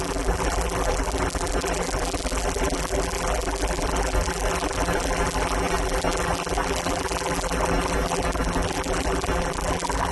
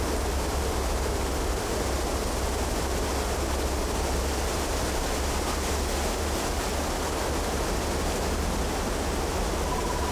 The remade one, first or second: first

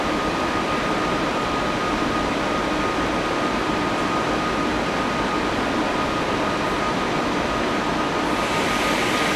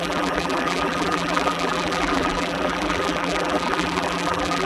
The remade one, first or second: second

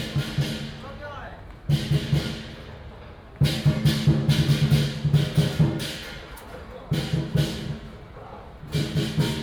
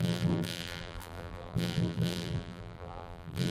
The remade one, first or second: second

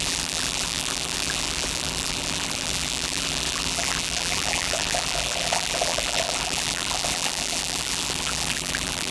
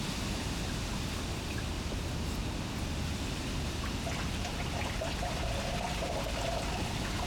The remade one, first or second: first